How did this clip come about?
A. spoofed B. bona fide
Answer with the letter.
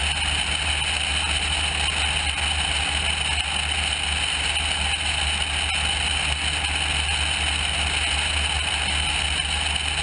B